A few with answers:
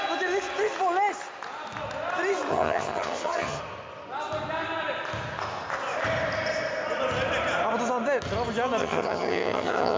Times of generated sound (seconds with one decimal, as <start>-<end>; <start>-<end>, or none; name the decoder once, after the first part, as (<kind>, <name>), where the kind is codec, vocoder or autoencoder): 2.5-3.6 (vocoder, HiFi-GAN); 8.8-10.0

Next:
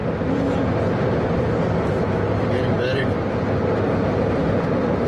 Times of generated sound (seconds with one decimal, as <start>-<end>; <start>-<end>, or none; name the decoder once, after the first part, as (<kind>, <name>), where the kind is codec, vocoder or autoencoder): none

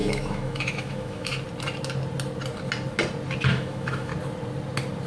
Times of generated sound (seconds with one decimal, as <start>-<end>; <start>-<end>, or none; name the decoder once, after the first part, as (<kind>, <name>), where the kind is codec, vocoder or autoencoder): 0.0-1.3 (autoencoder, DAC-VAE); 3.5-4.1

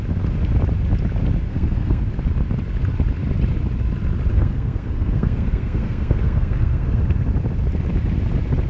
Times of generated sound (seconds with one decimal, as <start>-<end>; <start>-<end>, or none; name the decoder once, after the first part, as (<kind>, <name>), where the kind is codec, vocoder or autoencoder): 1.5-2.0 (codec, SNAC); 4.3-7.0

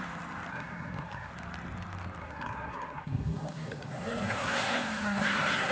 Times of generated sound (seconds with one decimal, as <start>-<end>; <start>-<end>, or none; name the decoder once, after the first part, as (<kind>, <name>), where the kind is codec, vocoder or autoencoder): 0.5-1.3 (codec, SNAC); 2.2-5.7

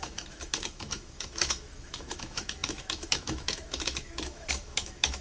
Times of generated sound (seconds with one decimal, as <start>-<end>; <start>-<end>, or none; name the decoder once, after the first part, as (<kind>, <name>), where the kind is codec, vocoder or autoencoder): 0.0-5.2 (autoencoder, DAC-VAE)

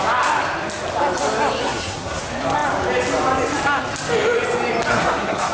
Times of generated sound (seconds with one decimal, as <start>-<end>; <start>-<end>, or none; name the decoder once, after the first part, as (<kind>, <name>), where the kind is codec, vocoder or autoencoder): 1.6-2.2 (codec, SNAC); 4.9-5.5